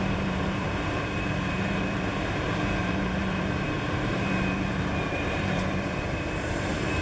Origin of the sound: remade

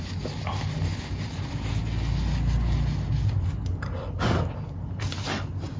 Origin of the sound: recorded